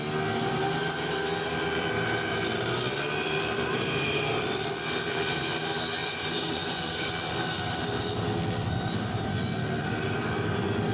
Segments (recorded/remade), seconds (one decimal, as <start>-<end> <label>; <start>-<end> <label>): 0.0-6.0 recorded; 6.0-7.1 remade; 7.1-10.9 recorded